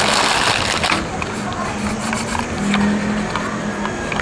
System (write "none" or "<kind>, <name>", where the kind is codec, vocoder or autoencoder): none